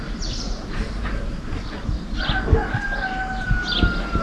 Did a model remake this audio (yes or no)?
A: no